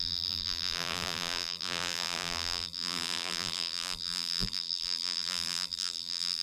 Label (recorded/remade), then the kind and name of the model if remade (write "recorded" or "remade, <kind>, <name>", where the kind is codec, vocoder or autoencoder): remade, vocoder, BigVGAN v2